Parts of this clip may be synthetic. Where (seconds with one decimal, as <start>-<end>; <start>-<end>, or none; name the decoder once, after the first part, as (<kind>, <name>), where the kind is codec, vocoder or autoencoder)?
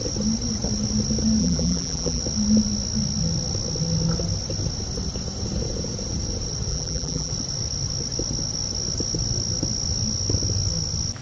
1.4-2.2 (vocoder, BigVGAN v2); 6.7-7.3